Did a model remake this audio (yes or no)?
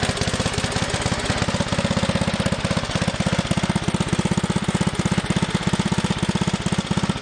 no